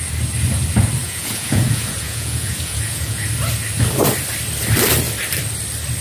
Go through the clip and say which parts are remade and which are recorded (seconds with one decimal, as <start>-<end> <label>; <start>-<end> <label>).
0.0-1.0 recorded; 1.0-3.3 remade; 3.3-6.0 recorded